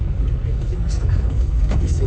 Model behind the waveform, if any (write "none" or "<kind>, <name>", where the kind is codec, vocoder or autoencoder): codec, SNAC